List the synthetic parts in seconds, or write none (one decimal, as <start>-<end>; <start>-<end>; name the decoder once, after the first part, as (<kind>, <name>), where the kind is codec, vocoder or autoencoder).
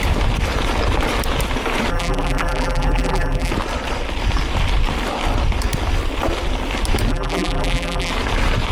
1.9-3.5 (vocoder, BigVGAN v2); 7.1-8.1